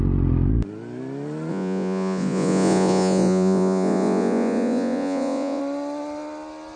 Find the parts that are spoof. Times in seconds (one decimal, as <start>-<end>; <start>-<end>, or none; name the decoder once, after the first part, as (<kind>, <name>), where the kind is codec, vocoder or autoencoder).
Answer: 1.5-5.6 (vocoder, Vocos)